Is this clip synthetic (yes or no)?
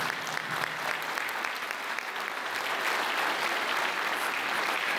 no